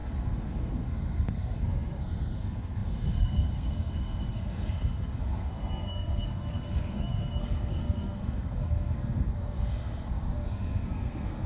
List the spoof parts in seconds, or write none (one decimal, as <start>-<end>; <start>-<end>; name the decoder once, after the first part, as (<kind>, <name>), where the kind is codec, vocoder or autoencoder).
0.0-11.5 (codec, SNAC)